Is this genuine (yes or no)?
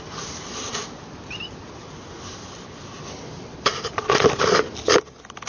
yes